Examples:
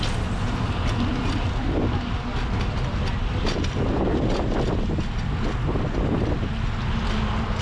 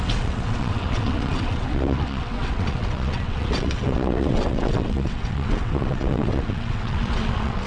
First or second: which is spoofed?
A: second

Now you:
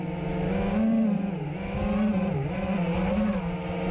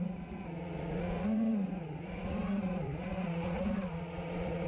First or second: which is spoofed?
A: second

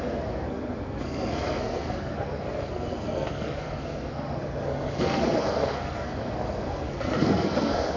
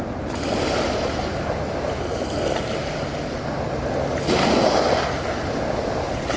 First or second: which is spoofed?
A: first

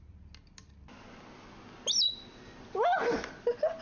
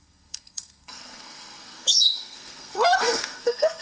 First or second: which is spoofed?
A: second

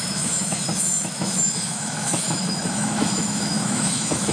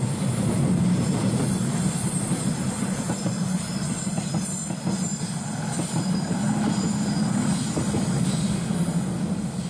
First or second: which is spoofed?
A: first